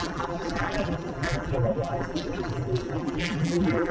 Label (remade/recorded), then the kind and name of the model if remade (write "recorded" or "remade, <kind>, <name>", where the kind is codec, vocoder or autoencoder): remade, vocoder, BigVGAN v2